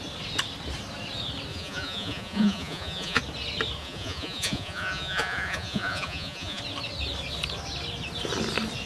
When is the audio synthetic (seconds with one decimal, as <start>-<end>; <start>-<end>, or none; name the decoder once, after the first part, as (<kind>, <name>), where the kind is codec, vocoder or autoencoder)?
1.5-3.2 (vocoder, Vocos); 3.8-6.6